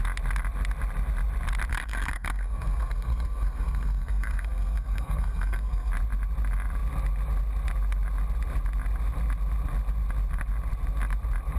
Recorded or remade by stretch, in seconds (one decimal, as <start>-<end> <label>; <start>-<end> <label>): 0.0-1.7 recorded; 1.7-5.9 remade; 5.9-11.6 recorded